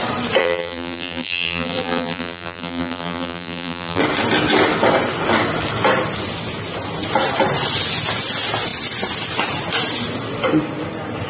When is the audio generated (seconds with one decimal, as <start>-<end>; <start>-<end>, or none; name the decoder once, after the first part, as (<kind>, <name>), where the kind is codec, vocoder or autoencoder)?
0.4-4.0 (vocoder, BigVGAN v2)